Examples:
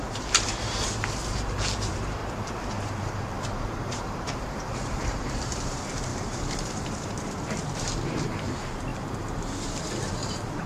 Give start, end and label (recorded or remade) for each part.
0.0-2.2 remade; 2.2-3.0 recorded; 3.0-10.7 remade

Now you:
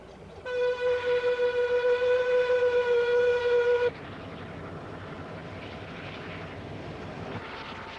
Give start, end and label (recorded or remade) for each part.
0.0-8.0 recorded

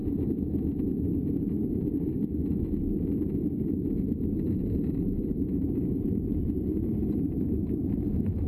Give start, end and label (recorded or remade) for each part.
0.0-4.5 recorded; 4.5-7.8 remade; 7.8-8.5 recorded

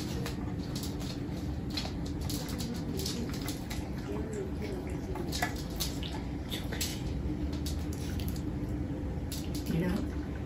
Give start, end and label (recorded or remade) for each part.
0.0-1.0 remade; 1.0-2.8 recorded; 2.8-3.7 remade; 3.7-5.2 recorded; 5.2-5.8 remade; 5.8-6.5 recorded; 6.5-6.9 remade; 6.9-8.1 recorded; 8.1-10.5 remade